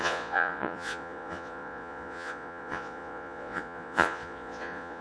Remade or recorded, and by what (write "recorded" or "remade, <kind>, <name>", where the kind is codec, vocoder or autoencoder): remade, vocoder, Vocos